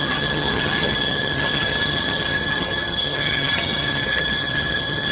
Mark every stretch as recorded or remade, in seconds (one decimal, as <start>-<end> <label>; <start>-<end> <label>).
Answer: 0.0-5.1 remade